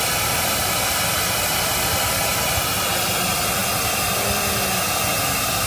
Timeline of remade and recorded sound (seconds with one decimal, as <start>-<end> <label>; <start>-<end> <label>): 0.0-5.7 recorded